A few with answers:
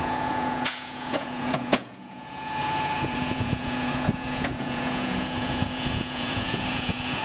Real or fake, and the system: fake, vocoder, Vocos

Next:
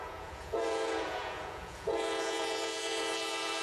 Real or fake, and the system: fake, vocoder, Vocos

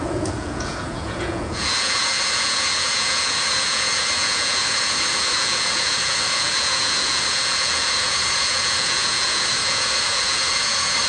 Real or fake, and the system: fake, vocoder, Vocos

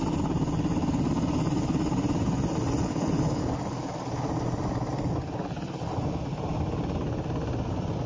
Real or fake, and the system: real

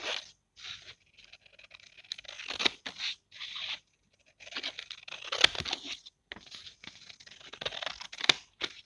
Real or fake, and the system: real